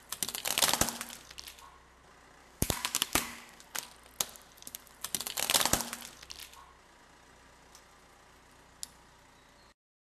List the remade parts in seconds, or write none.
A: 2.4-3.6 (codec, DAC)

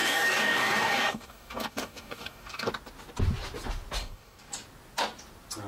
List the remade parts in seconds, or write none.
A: 0.0-2.7 (codec, DAC); 4.0-4.5

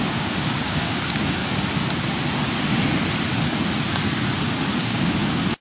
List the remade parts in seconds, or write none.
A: 0.0-1.4 (codec, DAC); 4.8-5.6

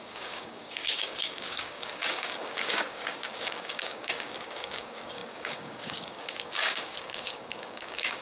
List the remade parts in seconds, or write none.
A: 0.0-8.2 (codec, DAC)